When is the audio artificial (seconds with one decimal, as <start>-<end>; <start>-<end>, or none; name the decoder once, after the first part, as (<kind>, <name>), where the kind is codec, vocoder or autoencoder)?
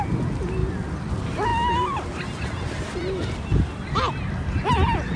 none